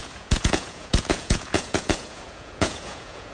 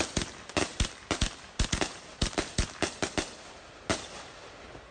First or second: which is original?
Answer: second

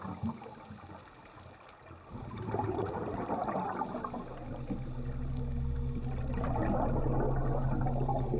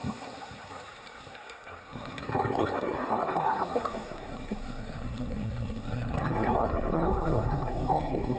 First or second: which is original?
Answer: first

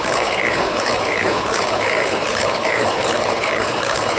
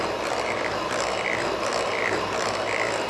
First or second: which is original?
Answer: second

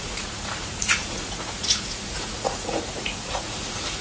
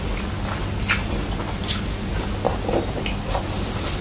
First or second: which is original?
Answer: second